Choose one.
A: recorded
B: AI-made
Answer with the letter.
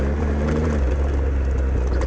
A